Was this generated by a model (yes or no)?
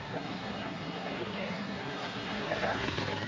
yes